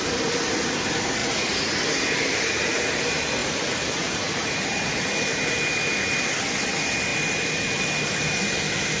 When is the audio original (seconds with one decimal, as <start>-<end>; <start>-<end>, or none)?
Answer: 0.0-1.2; 1.8-3.4; 5.1-9.0